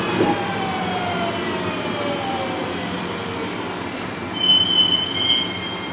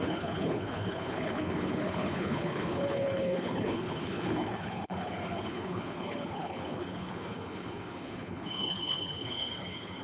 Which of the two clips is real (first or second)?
first